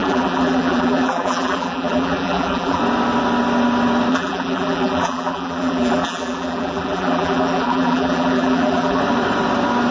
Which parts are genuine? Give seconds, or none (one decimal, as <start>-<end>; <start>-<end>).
2.8-4.1; 9.0-9.9

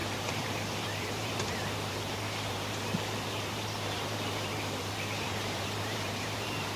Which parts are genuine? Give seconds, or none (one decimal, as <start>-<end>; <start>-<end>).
none

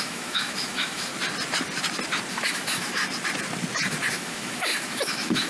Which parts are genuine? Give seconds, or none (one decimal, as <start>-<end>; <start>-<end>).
1.1-2.3; 3.0-4.1